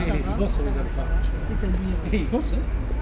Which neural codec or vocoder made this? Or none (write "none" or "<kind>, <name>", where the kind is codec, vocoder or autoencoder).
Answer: none